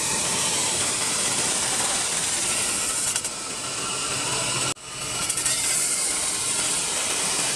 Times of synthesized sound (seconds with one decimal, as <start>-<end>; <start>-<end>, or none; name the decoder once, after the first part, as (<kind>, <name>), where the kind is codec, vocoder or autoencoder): 0.0-2.2 (vocoder, BigVGAN v2); 6.8-7.6